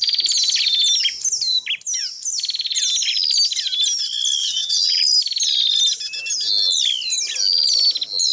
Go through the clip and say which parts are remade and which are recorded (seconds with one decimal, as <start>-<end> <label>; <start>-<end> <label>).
0.0-4.4 recorded; 4.4-5.0 remade; 5.0-8.3 recorded